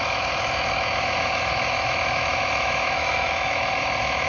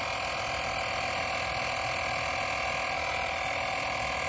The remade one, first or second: first